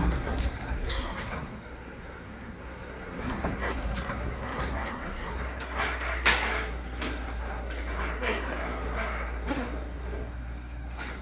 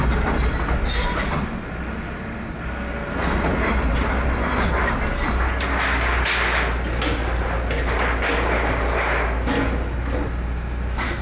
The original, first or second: second